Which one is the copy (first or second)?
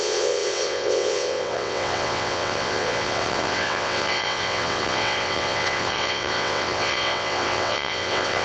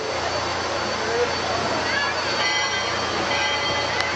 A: first